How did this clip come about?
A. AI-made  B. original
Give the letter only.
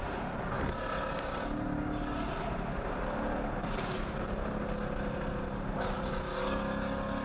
B